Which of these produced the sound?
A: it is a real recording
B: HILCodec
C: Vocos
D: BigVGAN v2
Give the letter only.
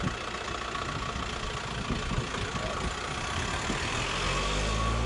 A